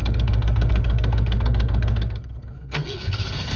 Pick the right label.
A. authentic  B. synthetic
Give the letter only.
B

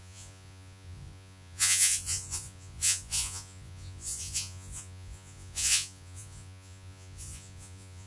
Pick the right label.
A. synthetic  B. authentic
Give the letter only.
A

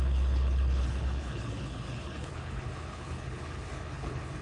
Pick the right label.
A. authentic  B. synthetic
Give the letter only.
B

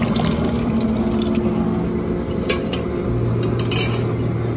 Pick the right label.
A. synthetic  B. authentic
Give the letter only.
B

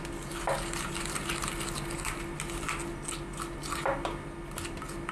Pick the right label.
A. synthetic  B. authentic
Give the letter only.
B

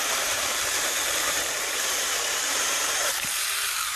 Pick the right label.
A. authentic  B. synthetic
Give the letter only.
B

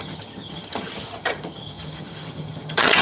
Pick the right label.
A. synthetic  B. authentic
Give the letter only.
A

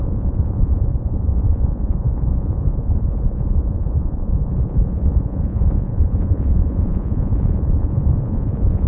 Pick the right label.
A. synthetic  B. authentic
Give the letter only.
A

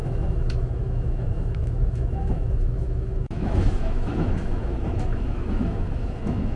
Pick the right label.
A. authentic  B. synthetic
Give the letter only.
B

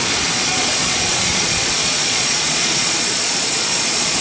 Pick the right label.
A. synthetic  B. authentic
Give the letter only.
A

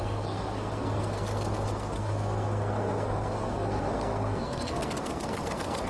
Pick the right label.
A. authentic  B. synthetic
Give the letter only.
B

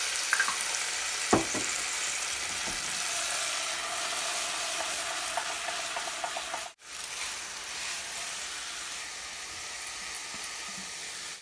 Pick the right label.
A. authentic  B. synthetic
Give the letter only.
A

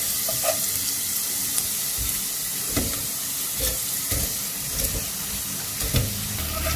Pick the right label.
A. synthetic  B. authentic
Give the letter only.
B